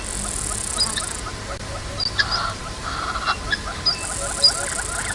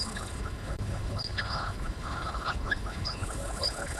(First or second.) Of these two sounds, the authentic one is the first